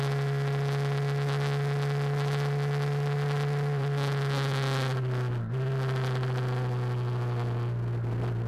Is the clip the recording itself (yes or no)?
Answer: yes